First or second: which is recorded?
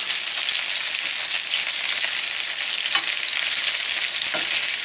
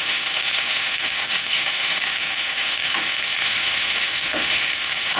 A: first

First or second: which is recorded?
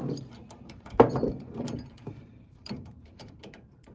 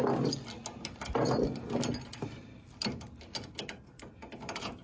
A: second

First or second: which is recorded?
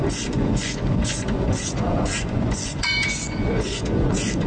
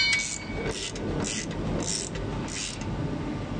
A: second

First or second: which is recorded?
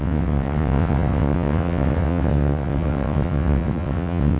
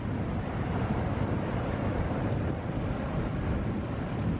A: second